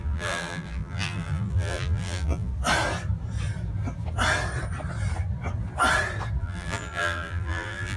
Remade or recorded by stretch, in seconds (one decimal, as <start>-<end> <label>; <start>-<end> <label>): 0.0-2.5 remade; 2.5-6.4 recorded; 6.4-8.0 remade